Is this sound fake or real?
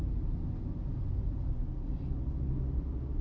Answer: real